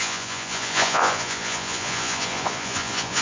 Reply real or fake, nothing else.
fake